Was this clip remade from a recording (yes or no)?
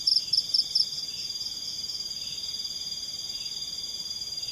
no